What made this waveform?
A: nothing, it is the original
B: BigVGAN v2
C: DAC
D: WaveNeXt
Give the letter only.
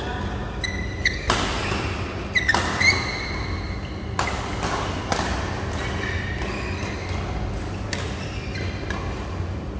A